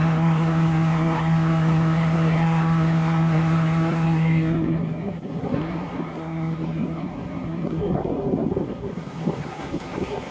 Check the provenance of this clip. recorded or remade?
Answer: remade